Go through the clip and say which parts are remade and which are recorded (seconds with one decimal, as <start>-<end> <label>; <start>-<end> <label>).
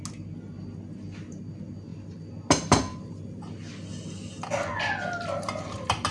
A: 0.0-6.1 recorded